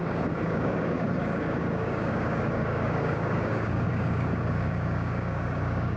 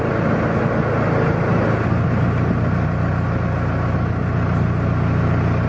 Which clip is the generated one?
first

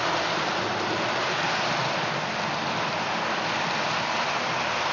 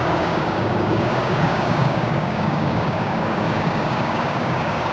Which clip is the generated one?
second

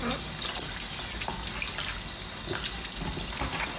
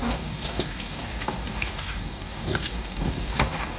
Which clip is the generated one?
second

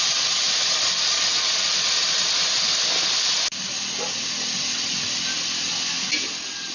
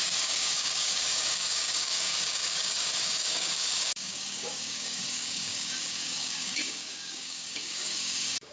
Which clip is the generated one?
second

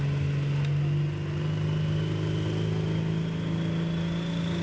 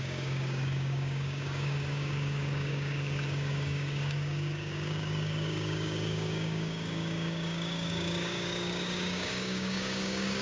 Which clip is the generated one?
second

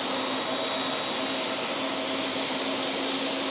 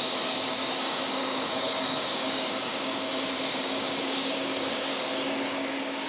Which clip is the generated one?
second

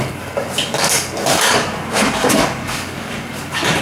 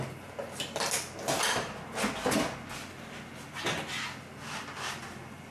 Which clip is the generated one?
first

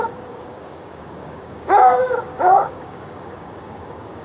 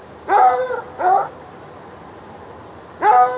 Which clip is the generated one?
first